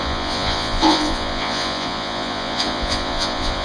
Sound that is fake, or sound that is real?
fake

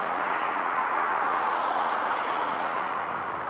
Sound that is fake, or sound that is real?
fake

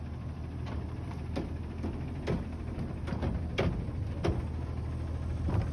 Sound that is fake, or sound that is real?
real